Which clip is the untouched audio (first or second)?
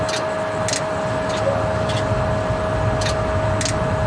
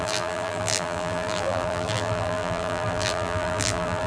first